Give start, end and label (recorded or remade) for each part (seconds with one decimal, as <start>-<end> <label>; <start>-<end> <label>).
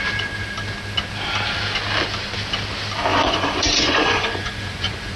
0.0-3.1 recorded; 3.1-5.2 remade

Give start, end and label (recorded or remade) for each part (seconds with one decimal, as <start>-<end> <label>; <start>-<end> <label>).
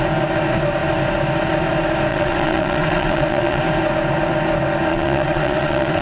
0.0-2.1 recorded; 2.1-3.6 remade; 3.6-4.9 recorded; 4.9-6.0 remade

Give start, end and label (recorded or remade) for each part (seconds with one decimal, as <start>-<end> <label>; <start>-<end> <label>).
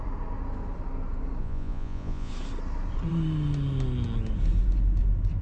0.0-1.4 recorded; 1.4-2.3 remade; 2.3-5.4 recorded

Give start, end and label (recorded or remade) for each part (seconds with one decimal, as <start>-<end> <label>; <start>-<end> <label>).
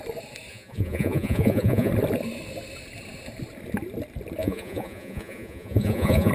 0.0-0.5 recorded; 0.5-1.9 remade; 1.9-4.4 recorded; 4.4-6.3 remade